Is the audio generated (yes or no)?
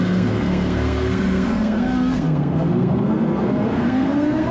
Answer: yes